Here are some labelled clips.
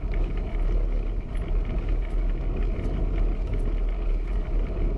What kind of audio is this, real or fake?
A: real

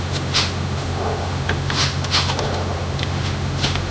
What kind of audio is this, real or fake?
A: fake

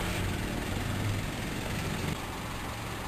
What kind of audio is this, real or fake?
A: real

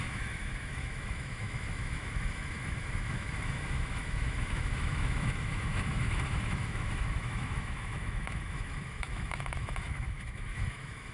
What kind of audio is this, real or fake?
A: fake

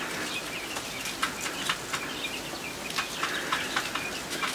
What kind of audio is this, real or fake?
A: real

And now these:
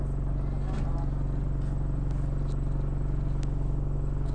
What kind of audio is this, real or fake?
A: real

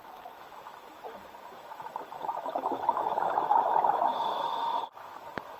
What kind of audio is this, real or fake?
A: fake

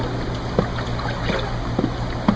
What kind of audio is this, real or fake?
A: real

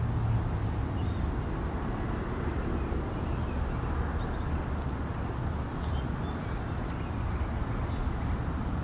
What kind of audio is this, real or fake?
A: real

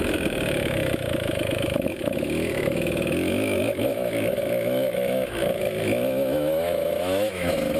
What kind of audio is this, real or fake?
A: fake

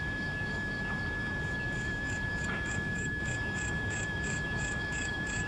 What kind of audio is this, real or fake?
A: fake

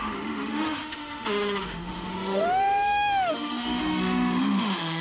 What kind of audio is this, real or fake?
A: fake